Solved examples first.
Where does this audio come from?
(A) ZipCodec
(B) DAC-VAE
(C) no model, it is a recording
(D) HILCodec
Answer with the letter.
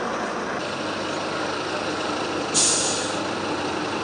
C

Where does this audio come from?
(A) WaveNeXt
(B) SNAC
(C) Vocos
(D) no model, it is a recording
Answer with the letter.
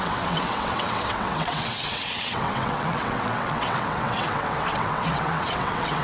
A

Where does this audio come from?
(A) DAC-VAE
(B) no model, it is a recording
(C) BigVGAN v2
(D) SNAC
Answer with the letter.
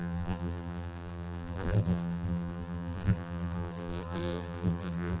C